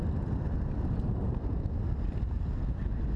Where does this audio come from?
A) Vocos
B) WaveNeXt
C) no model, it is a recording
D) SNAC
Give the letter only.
C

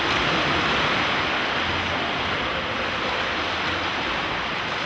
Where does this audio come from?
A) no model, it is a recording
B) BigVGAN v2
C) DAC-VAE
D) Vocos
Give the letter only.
A